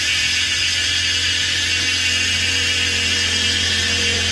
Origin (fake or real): real